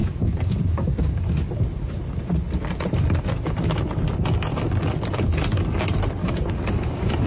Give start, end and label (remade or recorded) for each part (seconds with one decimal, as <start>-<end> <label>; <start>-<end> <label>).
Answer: 0.0-1.5 remade; 1.5-6.2 recorded; 6.2-7.3 remade